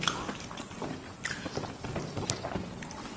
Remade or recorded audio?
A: recorded